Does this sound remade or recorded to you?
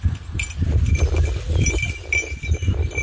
remade